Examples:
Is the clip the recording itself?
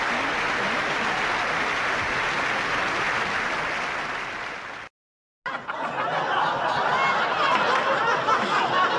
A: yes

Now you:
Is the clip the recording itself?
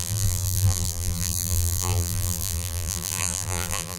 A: no